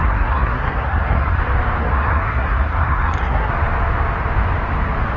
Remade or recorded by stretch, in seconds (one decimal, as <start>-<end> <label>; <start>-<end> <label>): 0.0-1.4 remade; 1.4-1.8 recorded; 1.8-3.5 remade; 3.5-5.2 recorded

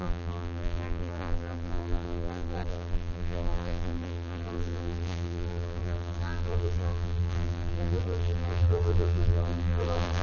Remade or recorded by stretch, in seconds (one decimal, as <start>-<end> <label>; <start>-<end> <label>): 0.0-10.2 remade